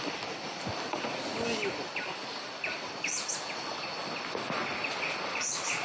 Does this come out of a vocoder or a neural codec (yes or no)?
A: no